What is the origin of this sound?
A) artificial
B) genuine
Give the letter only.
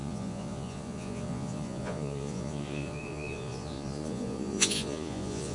A